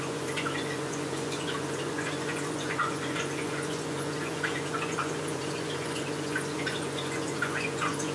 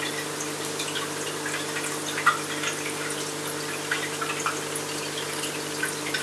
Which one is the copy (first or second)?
first